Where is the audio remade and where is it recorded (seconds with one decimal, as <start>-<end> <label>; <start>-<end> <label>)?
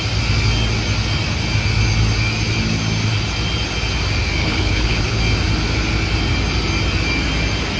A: 0.0-4.4 recorded; 4.4-5.2 remade; 5.2-7.8 recorded